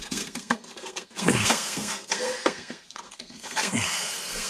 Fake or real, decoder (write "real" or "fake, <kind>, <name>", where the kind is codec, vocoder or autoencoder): fake, codec, SNAC